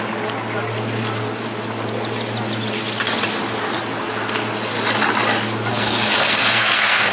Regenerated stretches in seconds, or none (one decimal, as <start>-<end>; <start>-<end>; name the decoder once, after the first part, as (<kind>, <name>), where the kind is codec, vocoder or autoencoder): 5.7-7.1 (codec, SNAC)